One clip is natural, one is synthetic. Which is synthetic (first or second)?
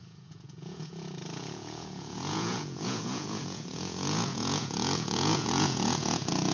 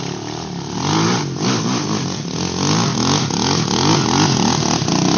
first